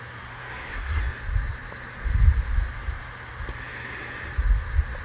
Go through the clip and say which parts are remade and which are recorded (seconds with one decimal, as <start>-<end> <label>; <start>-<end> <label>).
0.0-0.4 recorded; 0.4-1.0 remade; 1.0-5.0 recorded